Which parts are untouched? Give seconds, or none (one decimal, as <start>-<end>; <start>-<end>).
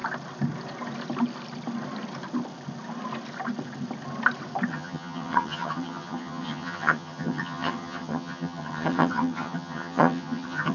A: 0.0-4.7